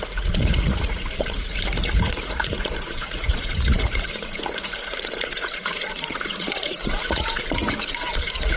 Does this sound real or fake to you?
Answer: fake